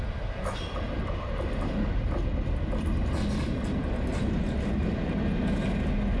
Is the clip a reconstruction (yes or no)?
no